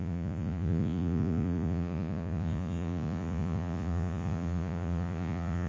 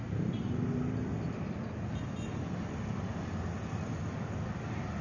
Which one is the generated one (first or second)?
first